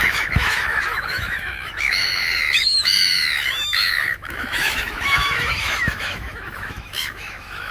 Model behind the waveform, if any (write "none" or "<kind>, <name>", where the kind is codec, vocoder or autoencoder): autoencoder, DAC-VAE